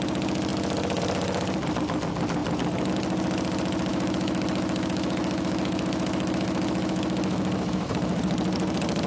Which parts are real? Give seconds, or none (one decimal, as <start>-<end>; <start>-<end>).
0.0-3.9; 8.1-9.1